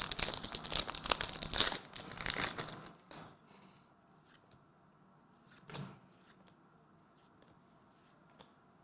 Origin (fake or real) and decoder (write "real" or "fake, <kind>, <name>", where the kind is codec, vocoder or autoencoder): real